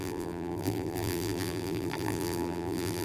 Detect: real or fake fake